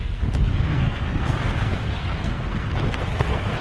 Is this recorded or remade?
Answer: remade